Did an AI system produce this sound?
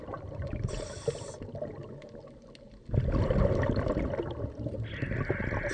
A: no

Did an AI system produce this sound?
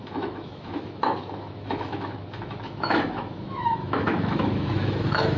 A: yes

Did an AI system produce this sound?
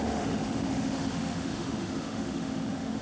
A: yes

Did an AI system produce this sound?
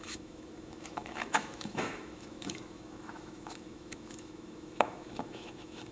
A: yes